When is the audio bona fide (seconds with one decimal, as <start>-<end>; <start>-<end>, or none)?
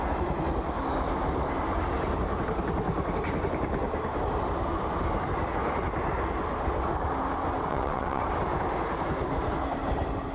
0.0-7.7; 8.2-10.3